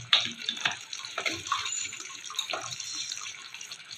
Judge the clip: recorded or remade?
remade